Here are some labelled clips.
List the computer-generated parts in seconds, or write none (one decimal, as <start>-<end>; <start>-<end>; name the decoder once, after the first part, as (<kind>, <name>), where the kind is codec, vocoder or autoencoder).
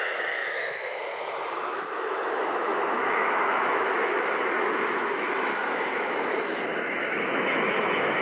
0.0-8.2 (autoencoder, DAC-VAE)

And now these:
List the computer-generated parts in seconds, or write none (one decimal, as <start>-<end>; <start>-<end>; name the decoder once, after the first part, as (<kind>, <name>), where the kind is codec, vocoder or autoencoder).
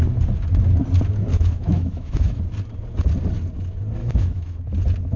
1.3-2.4 (autoencoder, DAC-VAE); 4.0-4.6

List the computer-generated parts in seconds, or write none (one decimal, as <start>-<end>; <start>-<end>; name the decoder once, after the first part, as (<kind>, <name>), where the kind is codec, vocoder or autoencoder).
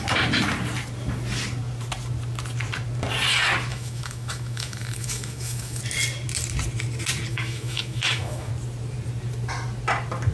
3.7-5.8 (autoencoder, DAC-VAE); 7.3-8.5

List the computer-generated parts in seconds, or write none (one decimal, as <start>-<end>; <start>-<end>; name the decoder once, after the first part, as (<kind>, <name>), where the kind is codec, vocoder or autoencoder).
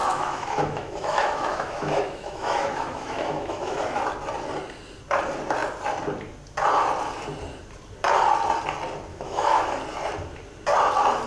0.0-4.0 (autoencoder, DAC-VAE); 9.1-9.7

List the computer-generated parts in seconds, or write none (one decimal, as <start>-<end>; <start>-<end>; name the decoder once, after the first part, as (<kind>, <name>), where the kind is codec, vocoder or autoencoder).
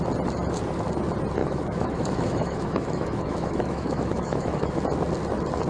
1.4-4.8 (autoencoder, DAC-VAE)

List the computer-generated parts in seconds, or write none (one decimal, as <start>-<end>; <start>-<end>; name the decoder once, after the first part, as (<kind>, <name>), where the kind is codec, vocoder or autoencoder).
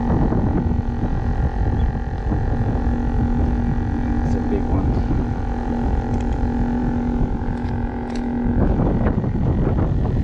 none